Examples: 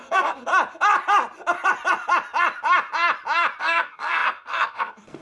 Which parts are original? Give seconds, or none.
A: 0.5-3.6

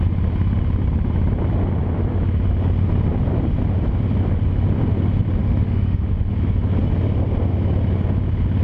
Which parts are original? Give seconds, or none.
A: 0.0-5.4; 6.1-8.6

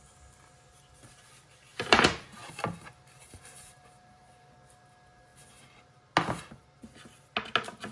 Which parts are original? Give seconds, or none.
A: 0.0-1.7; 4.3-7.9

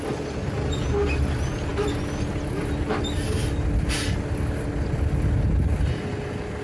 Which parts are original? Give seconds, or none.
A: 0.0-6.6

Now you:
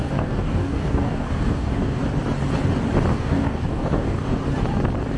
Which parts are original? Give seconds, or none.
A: 2.0-3.1; 4.4-5.2